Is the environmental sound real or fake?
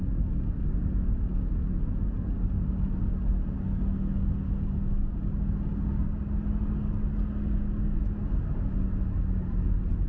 real